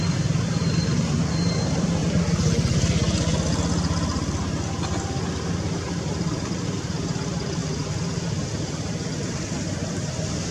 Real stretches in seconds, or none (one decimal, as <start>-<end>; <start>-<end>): 2.0-6.0